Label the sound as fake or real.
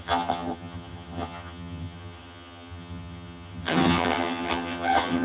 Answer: fake